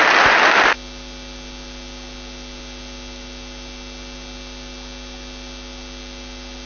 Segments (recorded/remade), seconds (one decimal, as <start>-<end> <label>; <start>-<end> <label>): 0.0-6.7 recorded